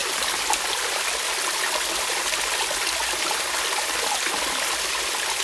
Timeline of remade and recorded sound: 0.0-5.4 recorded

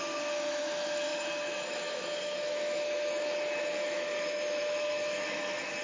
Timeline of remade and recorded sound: 0.0-5.8 remade

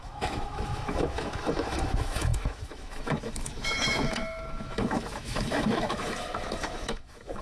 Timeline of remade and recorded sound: 0.0-7.4 remade

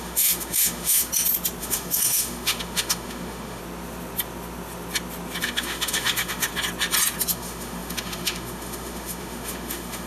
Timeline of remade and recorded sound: 0.0-1.1 remade; 1.1-1.6 recorded; 1.6-3.6 remade; 3.6-5.4 recorded; 5.4-6.5 remade; 6.5-7.3 recorded; 7.3-10.1 remade

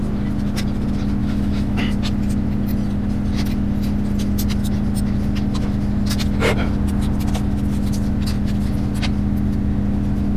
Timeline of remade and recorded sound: 0.0-1.2 recorded; 1.2-1.8 remade; 1.8-10.4 recorded

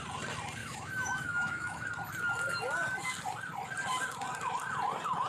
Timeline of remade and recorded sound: 0.0-0.6 recorded; 0.6-1.9 remade; 1.9-5.3 recorded